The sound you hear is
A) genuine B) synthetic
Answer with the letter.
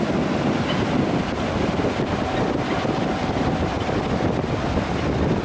A